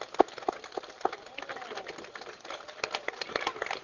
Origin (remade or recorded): recorded